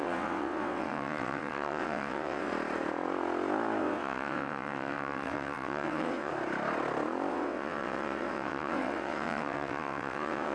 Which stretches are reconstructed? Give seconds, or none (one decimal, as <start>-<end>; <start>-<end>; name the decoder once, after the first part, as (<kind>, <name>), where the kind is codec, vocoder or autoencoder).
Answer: 0.0-2.5 (vocoder, WaveNeXt); 3.8-6.3; 7.3-10.5